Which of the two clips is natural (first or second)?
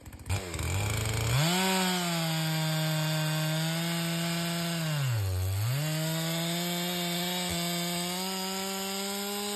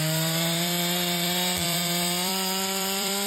first